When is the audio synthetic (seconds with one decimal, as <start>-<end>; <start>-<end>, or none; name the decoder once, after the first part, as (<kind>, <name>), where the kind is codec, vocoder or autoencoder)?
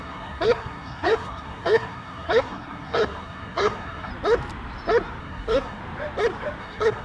0.0-4.1 (codec, SNAC); 5.2-5.8; 6.6-7.0